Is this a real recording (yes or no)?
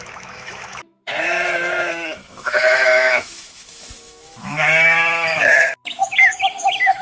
no